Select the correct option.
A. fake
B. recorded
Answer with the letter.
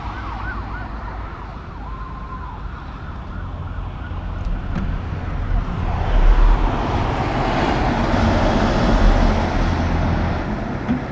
B